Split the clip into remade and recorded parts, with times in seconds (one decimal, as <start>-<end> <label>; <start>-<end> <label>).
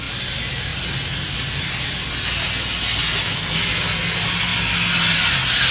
0.0-5.7 recorded